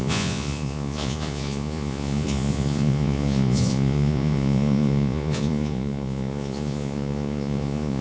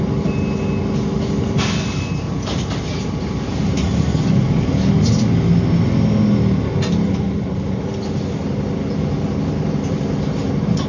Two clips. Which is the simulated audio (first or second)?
first